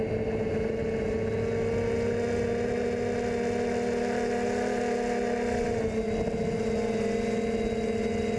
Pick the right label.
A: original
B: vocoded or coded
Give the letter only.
A